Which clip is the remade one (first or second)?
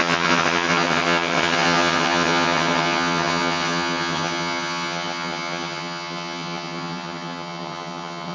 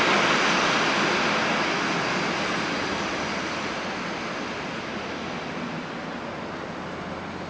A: first